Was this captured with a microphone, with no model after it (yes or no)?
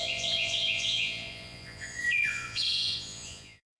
no